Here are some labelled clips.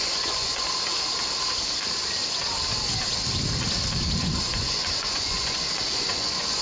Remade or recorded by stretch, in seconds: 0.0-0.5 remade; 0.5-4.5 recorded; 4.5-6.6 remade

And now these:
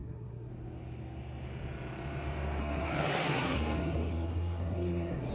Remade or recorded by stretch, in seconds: 0.0-0.5 remade; 0.5-2.6 recorded; 2.6-5.3 remade

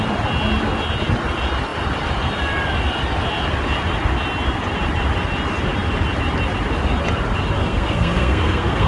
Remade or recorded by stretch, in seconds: 0.0-7.6 recorded; 7.6-8.9 remade

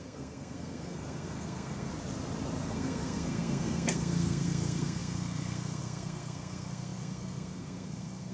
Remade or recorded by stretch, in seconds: 0.0-1.9 remade; 1.9-2.7 recorded; 2.7-8.3 remade

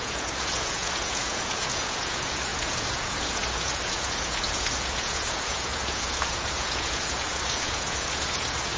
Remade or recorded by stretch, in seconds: 0.0-8.8 remade